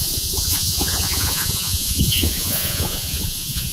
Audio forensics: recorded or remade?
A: remade